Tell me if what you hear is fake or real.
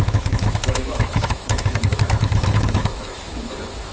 fake